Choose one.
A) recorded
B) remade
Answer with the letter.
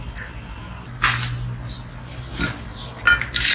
A